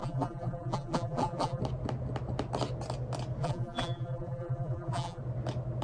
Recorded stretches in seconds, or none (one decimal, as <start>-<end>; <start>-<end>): 1.6-3.4; 5.2-5.8